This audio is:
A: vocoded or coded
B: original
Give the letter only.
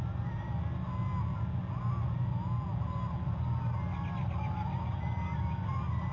B